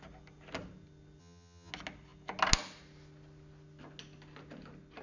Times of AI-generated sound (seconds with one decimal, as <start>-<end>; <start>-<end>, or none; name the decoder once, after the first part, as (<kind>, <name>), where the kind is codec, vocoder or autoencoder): 1.2-1.7 (vocoder, HiFi-GAN)

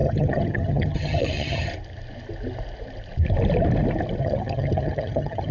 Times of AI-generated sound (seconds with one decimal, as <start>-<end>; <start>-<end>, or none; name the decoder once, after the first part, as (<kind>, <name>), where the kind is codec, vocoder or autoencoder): 0.0-1.7 (vocoder, HiFi-GAN); 4.2-5.5

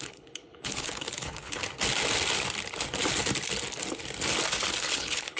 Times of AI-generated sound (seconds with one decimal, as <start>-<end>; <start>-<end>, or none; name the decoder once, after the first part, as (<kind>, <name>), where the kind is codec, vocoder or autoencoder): 0.0-1.6 (codec, HILCodec); 4.8-5.4

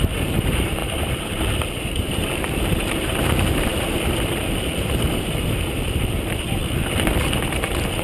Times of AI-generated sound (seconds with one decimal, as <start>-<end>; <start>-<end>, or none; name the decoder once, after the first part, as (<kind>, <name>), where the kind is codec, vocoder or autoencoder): 0.0-6.6 (vocoder, BigVGAN v2); 7.2-8.0

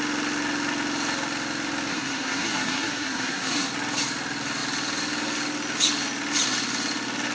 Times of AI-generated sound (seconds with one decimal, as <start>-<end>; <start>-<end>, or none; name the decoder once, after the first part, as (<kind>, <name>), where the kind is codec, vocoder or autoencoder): 1.9-3.7 (codec, SNAC)

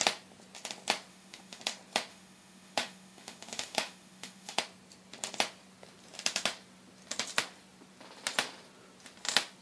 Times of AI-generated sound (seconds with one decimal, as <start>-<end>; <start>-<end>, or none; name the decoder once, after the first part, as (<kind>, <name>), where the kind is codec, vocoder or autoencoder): 1.1-1.6 (autoencoder, DAC-VAE); 2.1-4.6

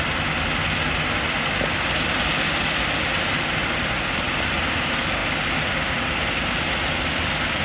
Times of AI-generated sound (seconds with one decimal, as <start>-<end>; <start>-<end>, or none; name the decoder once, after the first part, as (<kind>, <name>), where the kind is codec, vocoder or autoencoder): none